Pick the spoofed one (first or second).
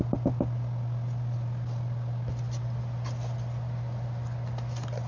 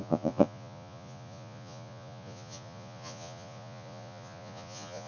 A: second